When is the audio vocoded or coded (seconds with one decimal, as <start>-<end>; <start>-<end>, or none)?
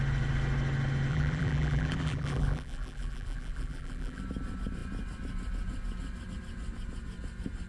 1.1-4.2